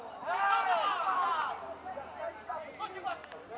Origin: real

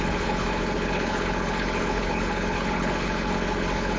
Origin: fake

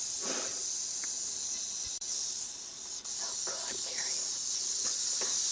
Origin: real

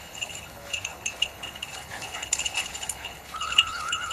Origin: fake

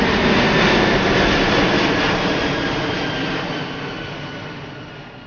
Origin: real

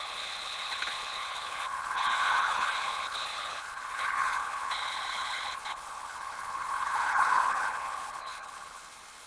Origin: fake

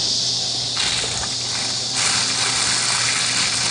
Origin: real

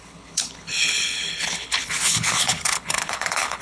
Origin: fake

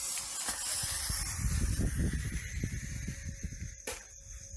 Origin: real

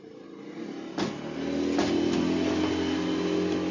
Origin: real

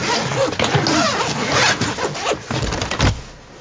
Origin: real